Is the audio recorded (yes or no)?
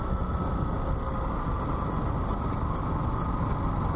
yes